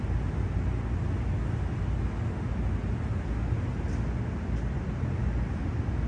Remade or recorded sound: recorded